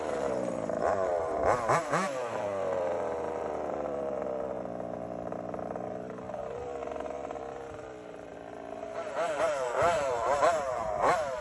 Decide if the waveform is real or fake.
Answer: fake